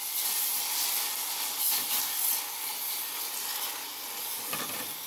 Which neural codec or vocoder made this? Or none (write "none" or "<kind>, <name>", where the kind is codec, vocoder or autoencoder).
none